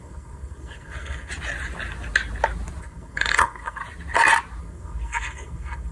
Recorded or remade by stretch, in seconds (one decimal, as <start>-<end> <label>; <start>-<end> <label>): 0.0-1.3 remade; 1.3-2.8 recorded; 2.8-3.8 remade; 3.8-4.6 recorded; 4.6-5.9 remade